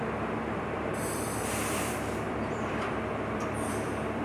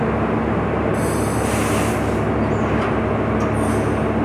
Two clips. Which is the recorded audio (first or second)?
second